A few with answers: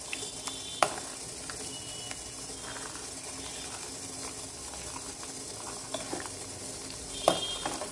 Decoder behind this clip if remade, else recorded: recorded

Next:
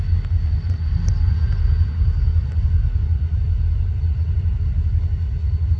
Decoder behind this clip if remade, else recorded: recorded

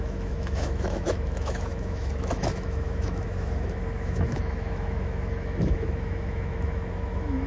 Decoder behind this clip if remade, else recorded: remade, autoencoder, DAC-VAE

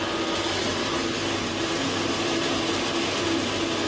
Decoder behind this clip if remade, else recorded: recorded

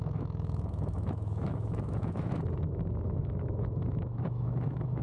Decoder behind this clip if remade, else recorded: remade, autoencoder, DAC-VAE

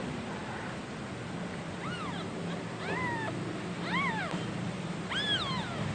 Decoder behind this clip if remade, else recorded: recorded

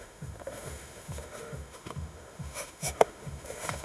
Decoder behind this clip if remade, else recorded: remade, autoencoder, DAC-VAE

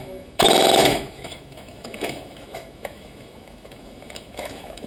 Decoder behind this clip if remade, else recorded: remade, autoencoder, DAC-VAE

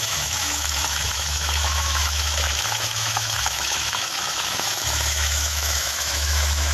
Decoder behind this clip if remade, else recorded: remade, autoencoder, DAC-VAE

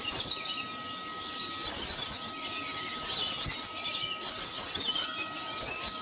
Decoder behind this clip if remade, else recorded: recorded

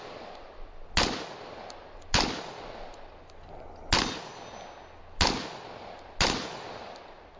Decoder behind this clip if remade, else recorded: recorded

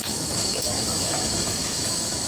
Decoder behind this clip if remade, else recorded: remade, autoencoder, DAC-VAE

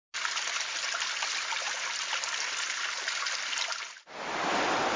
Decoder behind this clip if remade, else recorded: recorded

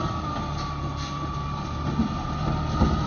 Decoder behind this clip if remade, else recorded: recorded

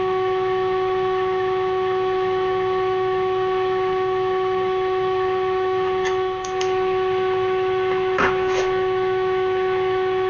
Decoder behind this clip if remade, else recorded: remade, autoencoder, DAC-VAE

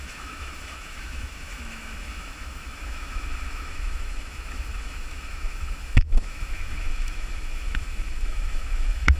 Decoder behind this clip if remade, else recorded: remade, autoencoder, DAC-VAE